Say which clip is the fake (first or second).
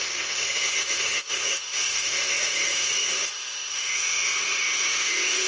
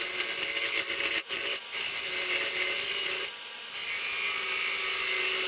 first